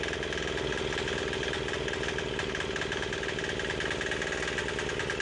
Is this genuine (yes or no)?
yes